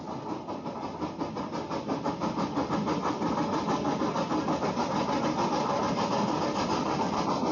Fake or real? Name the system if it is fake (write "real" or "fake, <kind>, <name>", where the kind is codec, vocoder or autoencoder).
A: real